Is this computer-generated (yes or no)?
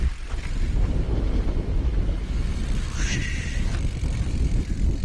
no